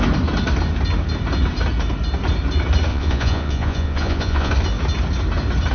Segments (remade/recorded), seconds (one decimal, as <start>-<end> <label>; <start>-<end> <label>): 0.0-2.9 recorded; 2.9-4.5 remade; 4.5-5.7 recorded